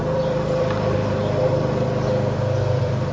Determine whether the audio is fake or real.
fake